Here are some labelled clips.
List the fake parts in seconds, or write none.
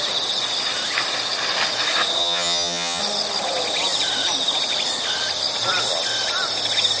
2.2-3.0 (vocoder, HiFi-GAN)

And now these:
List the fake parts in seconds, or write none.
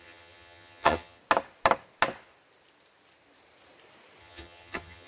0.0-1.2 (vocoder, HiFi-GAN); 4.2-5.1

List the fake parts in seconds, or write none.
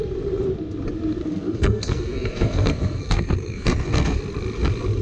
1.2-4.2 (codec, SNAC)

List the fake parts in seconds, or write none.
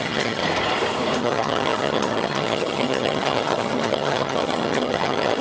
0.0-0.4 (vocoder, HiFi-GAN); 1.2-5.4